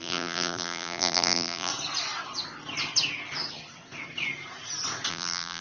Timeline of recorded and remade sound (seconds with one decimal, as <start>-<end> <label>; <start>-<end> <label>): 0.0-1.7 remade; 1.7-5.1 recorded; 5.1-5.6 remade